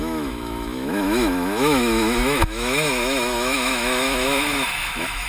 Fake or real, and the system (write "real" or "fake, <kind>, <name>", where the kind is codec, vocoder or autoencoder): fake, autoencoder, DAC-VAE